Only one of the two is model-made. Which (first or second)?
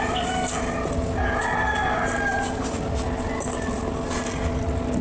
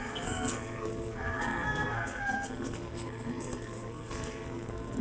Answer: second